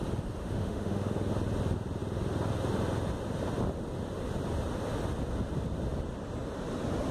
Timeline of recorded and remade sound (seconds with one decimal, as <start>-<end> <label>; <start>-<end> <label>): 0.0-0.4 recorded; 0.4-1.1 remade; 1.1-7.1 recorded